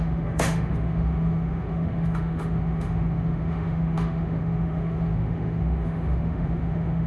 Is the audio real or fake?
fake